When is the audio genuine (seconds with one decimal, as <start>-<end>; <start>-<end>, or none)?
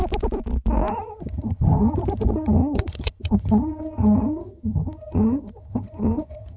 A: 0.0-0.9